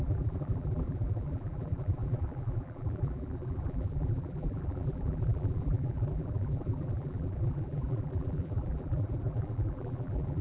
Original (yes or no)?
no